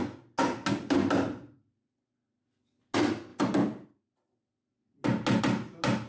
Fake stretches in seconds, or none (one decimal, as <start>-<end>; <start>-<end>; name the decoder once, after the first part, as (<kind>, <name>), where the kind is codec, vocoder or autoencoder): none

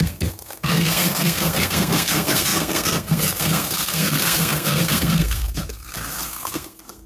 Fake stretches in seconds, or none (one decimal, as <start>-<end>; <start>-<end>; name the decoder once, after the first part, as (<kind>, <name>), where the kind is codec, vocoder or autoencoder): 0.0-7.1 (codec, SNAC)

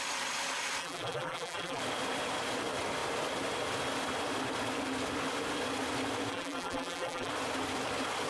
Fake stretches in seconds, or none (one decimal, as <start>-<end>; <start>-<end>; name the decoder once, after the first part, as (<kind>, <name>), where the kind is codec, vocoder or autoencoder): 0.8-1.8 (vocoder, BigVGAN v2); 6.3-7.3

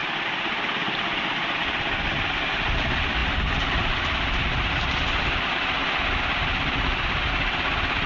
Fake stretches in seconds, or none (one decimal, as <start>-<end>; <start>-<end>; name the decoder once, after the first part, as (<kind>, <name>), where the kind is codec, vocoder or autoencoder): none

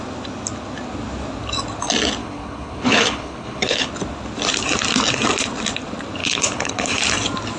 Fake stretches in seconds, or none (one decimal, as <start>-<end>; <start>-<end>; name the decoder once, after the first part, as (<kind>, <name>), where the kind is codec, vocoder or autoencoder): 2.2-3.9 (codec, HILCodec); 6.2-7.0

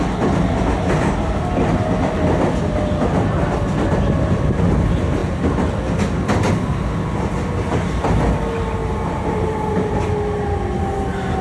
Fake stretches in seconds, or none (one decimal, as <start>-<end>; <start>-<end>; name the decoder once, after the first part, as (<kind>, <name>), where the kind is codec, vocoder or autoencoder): 8.8-10.2 (vocoder, BigVGAN v2)

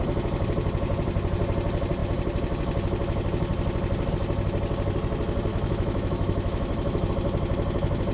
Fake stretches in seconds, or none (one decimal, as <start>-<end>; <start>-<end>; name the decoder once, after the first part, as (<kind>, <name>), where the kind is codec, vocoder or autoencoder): 5.5-7.1 (autoencoder, DAC-VAE)

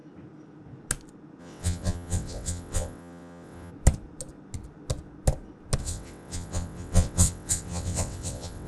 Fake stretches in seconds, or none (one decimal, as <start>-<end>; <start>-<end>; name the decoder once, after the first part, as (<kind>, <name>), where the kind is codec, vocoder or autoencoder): 1.4-3.7 (vocoder, WaveNeXt); 5.8-8.7